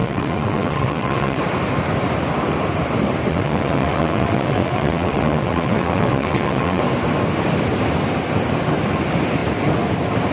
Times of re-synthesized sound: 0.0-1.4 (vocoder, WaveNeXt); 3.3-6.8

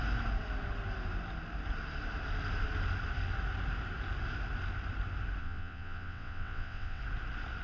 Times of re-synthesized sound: 5.4-7.0 (vocoder, WaveNeXt)

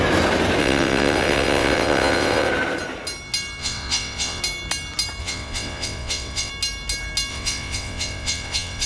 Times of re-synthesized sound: 0.6-2.5 (vocoder, WaveNeXt); 3.6-4.4; 5.2-6.5; 7.3-8.9

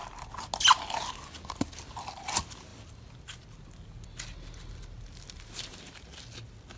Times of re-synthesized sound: none

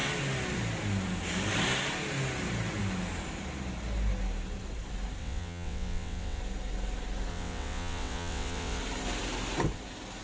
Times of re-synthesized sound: 5.2-6.4 (vocoder, WaveNeXt); 7.3-8.8

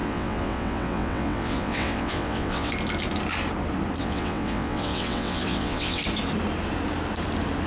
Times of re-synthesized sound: 0.0-2.7 (vocoder, WaveNeXt); 4.0-6.0